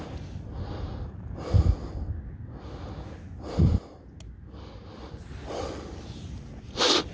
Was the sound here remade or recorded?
recorded